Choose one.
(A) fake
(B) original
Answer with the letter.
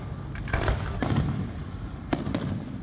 B